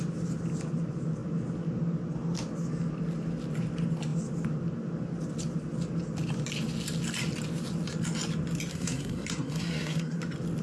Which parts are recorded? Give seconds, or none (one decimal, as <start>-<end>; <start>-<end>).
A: 0.0-8.7; 10.2-10.6